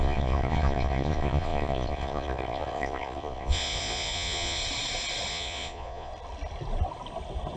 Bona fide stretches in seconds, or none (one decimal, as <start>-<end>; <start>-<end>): 4.6-5.3; 6.1-7.6

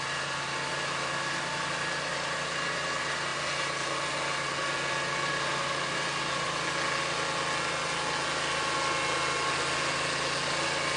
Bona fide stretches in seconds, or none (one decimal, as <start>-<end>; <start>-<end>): 0.0-11.0

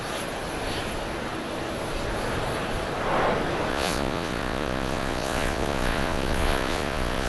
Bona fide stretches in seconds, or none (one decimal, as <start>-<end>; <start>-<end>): 0.0-3.7

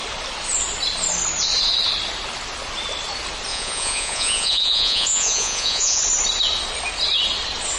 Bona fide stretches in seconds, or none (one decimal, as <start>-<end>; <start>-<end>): 0.0-3.5; 6.0-7.8

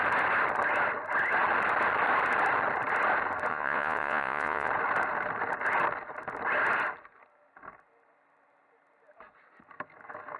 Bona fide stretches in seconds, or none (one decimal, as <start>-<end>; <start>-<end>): 0.0-3.5; 4.7-10.4

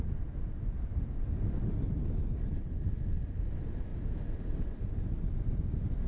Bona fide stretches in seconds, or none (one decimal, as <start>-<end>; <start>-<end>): 0.0-6.1

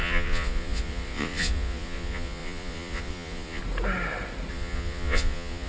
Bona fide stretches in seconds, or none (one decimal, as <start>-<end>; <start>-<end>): 3.6-4.5